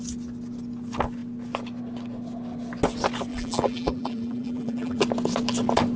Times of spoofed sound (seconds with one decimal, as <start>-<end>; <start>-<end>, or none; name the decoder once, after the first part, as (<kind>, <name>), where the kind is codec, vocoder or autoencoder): 3.3-5.0 (vocoder, BigVGAN v2)